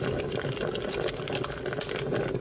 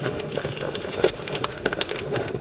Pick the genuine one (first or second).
first